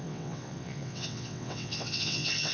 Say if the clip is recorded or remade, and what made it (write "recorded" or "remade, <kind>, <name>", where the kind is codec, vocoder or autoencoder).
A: remade, vocoder, WaveNeXt